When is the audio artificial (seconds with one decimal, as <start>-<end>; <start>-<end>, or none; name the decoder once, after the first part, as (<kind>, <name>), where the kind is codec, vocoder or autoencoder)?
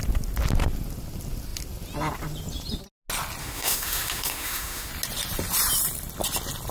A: 3.4-4.9 (autoencoder, DAC-VAE)